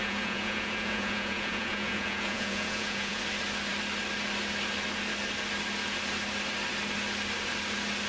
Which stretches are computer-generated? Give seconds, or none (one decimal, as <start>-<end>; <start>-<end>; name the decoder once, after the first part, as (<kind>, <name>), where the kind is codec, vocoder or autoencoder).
0.0-3.2 (vocoder, Vocos)